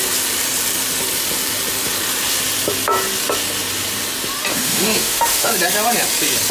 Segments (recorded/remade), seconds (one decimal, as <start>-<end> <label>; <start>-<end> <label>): 0.0-4.5 recorded; 4.5-5.5 remade; 5.5-6.5 recorded

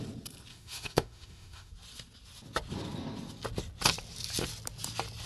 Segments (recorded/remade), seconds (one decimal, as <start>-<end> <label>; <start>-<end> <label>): 0.0-0.5 recorded; 0.5-1.7 remade; 1.7-5.3 recorded

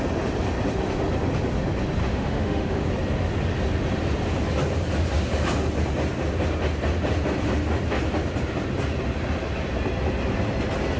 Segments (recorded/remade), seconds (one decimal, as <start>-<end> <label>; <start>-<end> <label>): 0.0-2.0 recorded; 2.0-2.9 remade; 2.9-11.0 recorded

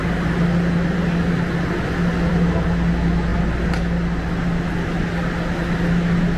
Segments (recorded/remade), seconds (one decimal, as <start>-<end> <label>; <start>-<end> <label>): 0.0-6.4 recorded